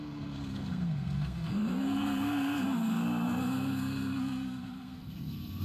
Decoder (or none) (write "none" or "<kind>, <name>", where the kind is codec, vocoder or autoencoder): codec, SNAC